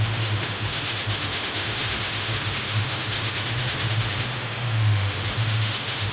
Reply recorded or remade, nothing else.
remade